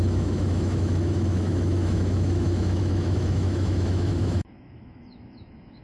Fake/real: fake